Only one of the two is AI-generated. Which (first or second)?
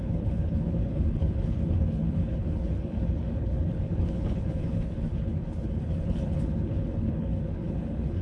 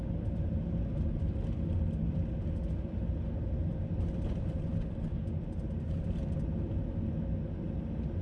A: first